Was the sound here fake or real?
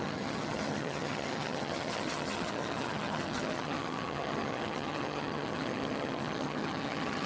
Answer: fake